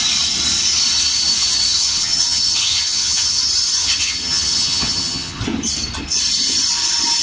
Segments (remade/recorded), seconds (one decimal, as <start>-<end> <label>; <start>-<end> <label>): 0.0-1.7 recorded; 1.7-3.4 remade; 3.4-3.8 recorded; 3.8-5.4 remade; 5.4-7.2 recorded